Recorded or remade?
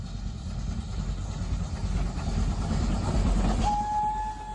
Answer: recorded